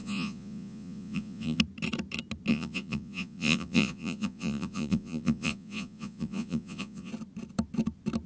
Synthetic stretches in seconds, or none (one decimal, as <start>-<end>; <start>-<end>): 0.0-1.6; 2.5-7.1